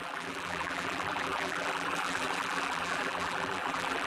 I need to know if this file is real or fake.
fake